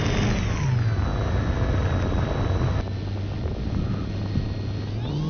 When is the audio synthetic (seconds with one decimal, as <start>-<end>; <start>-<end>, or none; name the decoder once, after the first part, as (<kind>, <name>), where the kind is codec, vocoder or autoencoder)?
none

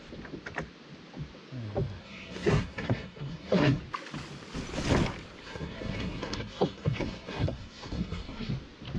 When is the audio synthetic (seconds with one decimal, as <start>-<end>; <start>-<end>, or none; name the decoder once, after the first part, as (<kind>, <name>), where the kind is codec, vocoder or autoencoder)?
2.0-3.8 (codec, SNAC); 5.4-8.5

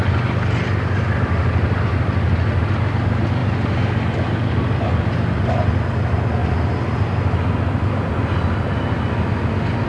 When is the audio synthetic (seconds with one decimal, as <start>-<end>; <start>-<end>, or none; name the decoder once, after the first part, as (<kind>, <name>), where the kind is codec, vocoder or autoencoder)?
none

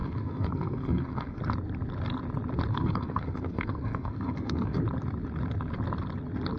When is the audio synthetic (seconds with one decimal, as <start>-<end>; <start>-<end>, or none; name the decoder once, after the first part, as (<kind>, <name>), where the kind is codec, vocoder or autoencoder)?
0.0-1.4 (codec, SNAC); 2.7-4.8

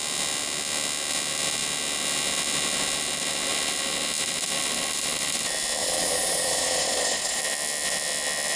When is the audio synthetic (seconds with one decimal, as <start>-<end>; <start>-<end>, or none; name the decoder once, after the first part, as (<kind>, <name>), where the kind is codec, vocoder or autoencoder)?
5.8-7.4 (vocoder, Vocos)

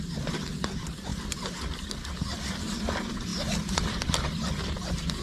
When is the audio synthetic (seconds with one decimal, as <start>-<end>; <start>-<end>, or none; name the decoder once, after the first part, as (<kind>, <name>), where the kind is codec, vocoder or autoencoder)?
3.3-4.3 (vocoder, BigVGAN v2)